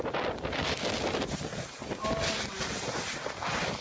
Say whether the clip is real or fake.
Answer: real